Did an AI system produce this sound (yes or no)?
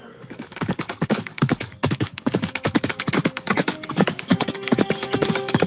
yes